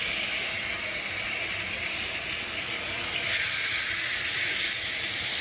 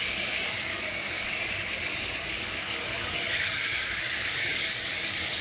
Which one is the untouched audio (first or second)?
first